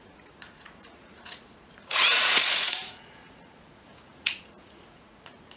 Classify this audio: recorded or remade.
remade